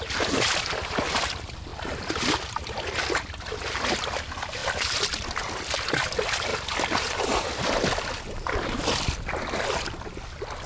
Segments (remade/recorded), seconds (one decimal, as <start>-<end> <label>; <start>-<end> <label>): 0.0-4.6 recorded; 4.6-5.4 remade; 5.4-10.7 recorded